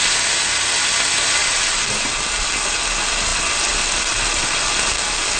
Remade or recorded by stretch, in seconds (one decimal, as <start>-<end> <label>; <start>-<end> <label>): 0.0-5.4 recorded